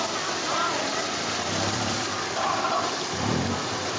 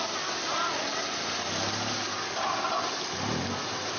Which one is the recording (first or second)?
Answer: second